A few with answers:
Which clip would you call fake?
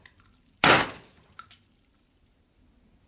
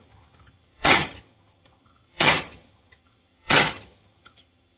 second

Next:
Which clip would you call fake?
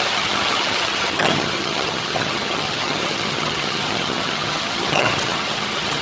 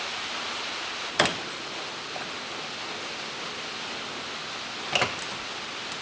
first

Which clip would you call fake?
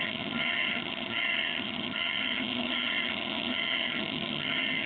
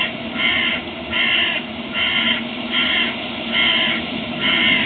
first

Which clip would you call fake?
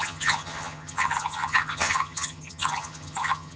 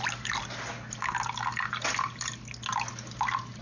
first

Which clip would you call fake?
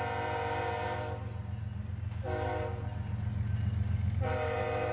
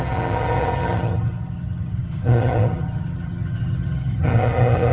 second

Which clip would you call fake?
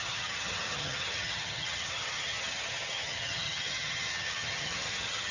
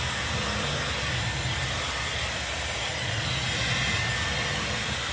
first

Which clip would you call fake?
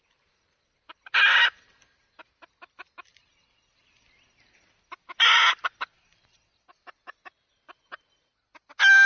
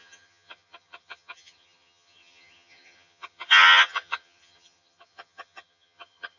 second